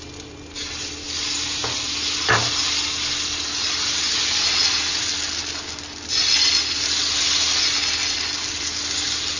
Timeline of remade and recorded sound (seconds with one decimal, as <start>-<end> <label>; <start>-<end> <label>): 0.0-9.4 recorded